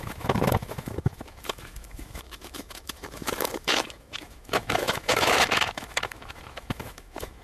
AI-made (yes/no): yes